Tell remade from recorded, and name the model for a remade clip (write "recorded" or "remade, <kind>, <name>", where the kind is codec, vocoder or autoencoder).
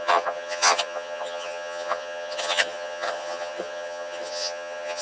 remade, vocoder, HiFi-GAN